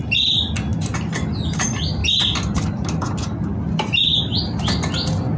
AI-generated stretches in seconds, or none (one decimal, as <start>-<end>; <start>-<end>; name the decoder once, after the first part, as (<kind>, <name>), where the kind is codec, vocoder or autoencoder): none